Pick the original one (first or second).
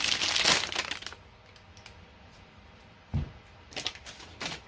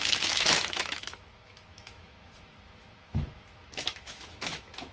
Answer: first